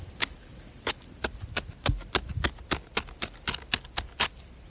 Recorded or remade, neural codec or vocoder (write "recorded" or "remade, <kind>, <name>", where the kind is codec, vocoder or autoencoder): recorded